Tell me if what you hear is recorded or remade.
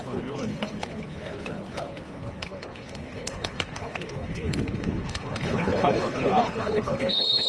remade